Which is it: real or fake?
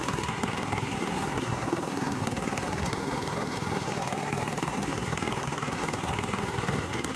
fake